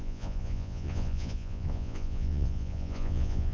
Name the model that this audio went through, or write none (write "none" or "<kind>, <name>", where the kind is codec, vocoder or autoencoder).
vocoder, Vocos